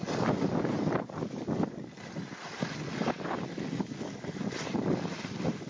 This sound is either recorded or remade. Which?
recorded